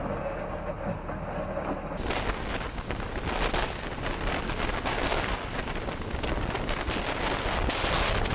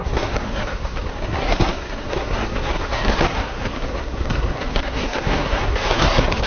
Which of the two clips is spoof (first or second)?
second